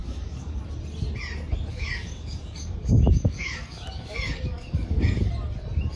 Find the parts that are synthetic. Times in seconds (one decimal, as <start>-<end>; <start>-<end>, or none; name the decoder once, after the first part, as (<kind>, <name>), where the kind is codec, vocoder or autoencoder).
0.0-0.6 (codec, DAC); 1.7-5.3